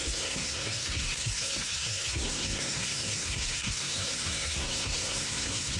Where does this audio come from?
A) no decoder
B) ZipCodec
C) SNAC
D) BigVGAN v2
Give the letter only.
C